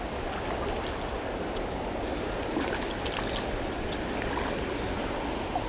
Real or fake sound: real